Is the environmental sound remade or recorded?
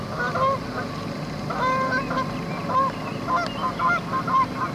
recorded